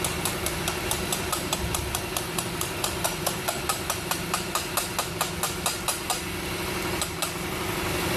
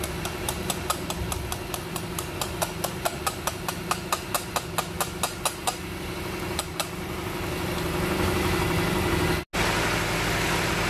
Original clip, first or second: second